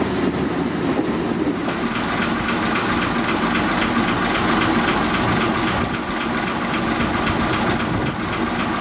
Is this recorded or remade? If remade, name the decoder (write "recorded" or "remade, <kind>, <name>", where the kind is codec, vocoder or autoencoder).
recorded